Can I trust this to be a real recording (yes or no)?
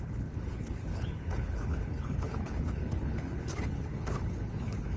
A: no